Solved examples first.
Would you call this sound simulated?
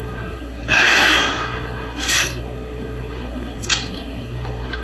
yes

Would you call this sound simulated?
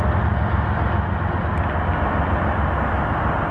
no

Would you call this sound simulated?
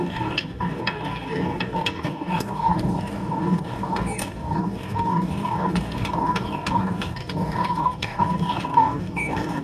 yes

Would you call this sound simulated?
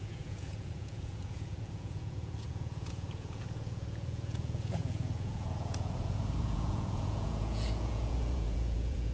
yes